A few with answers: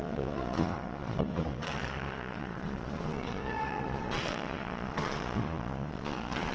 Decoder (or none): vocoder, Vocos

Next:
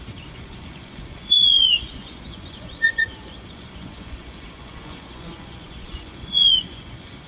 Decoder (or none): vocoder, Vocos